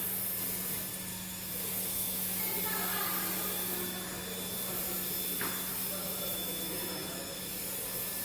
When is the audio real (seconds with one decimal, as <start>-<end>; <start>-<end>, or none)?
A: 0.0-1.1; 2.4-6.0; 7.4-8.2